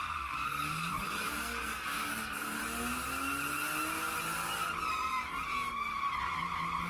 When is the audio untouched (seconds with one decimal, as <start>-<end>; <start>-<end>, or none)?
2.6-6.9